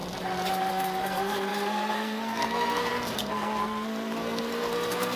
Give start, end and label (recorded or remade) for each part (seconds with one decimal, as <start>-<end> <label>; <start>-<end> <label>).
0.0-0.7 recorded; 0.7-5.2 remade